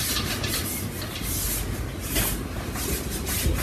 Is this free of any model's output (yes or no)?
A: yes